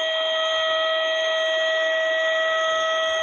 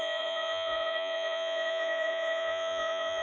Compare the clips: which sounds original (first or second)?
first